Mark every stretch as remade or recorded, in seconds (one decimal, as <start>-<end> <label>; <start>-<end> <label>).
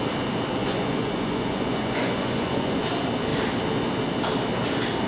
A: 0.0-0.6 recorded; 0.6-2.8 remade; 2.8-5.1 recorded